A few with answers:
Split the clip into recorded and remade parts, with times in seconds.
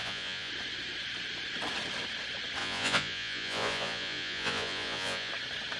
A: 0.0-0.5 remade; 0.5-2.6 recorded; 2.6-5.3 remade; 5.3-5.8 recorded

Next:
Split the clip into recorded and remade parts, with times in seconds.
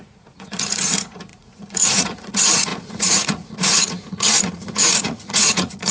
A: 0.0-5.9 remade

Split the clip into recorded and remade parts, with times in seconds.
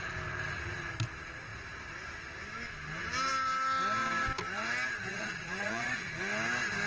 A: 0.0-5.1 recorded; 5.1-6.2 remade; 6.2-6.9 recorded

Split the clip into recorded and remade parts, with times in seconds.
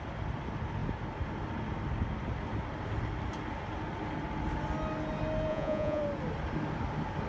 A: 0.0-5.5 recorded; 5.5-6.0 remade; 6.0-7.3 recorded